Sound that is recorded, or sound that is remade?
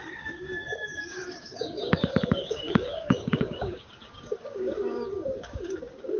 remade